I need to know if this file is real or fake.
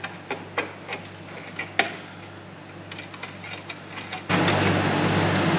real